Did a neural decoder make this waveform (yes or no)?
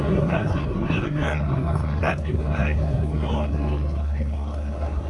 yes